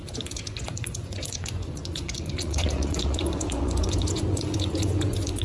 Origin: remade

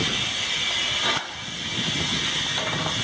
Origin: recorded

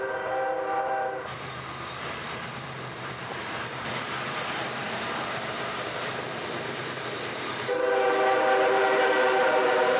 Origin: remade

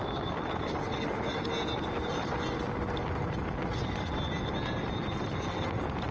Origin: recorded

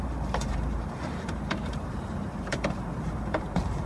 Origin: remade